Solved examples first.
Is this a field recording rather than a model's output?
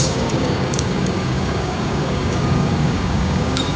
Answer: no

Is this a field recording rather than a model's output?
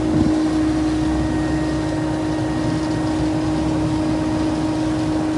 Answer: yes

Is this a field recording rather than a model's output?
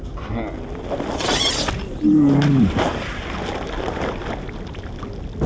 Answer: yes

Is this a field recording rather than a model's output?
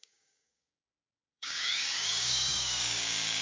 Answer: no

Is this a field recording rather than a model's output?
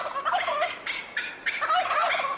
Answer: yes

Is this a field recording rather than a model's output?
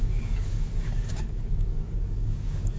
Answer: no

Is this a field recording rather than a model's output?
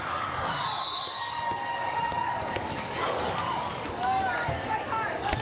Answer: no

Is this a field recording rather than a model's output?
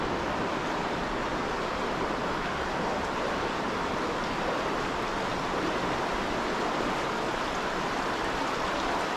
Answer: yes